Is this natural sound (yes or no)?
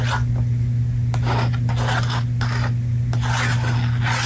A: yes